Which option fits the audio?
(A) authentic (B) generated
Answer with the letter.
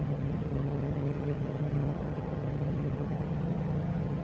B